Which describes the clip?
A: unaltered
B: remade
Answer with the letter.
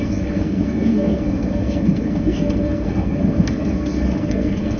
B